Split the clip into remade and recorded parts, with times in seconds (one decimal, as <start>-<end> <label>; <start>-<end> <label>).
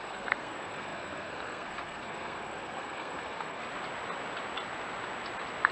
0.0-3.6 remade; 3.6-5.7 recorded